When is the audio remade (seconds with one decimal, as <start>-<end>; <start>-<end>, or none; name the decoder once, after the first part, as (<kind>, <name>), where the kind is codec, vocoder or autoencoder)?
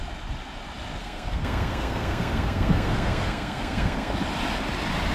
1.0-4.1 (codec, SNAC)